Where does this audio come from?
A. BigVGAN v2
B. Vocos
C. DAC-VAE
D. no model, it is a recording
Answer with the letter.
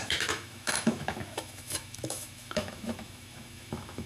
C